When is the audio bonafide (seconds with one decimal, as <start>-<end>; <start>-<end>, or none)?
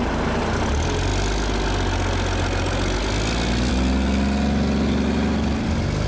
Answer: 0.0-6.1